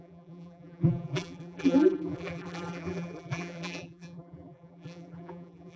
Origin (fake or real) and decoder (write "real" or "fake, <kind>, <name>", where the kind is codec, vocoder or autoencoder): fake, vocoder, BigVGAN v2